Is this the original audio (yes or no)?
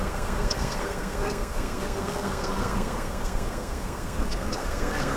no